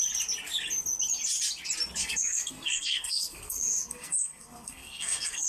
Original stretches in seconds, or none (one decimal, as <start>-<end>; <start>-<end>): 0.0-2.0